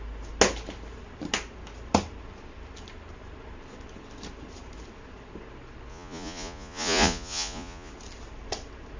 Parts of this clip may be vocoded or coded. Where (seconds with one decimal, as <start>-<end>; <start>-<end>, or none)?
5.9-7.9